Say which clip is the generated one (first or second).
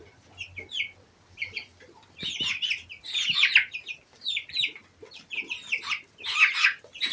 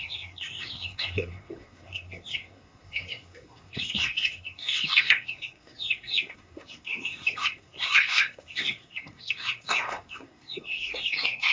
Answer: second